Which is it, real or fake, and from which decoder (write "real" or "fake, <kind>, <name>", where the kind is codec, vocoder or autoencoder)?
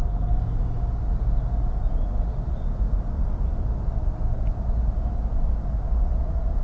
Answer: real